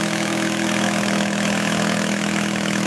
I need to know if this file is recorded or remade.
remade